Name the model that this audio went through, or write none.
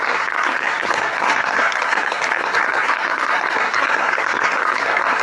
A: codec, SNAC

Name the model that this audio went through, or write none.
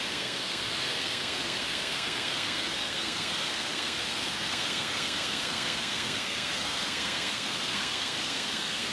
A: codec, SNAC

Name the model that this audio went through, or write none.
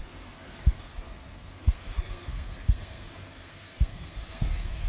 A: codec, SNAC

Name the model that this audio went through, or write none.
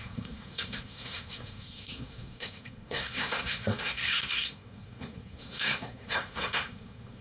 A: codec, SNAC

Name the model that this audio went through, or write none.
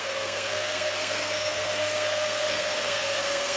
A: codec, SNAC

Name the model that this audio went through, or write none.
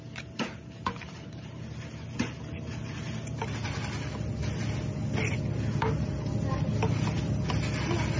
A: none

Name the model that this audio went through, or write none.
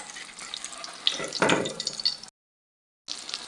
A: none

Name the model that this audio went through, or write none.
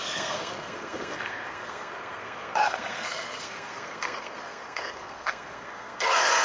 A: codec, SNAC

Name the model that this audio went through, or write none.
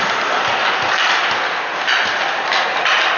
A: none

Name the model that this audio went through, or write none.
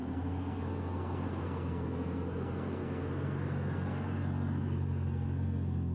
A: codec, SNAC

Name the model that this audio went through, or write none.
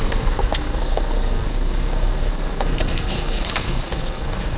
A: codec, SNAC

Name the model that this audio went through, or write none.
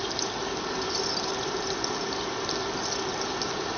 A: none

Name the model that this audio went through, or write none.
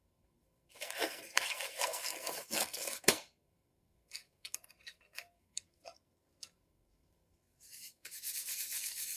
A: codec, SNAC